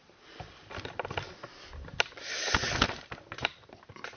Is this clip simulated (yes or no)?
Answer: no